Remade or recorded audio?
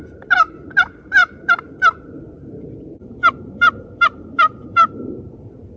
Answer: remade